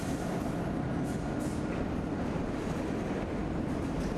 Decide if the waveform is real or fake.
real